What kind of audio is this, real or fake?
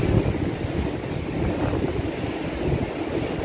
real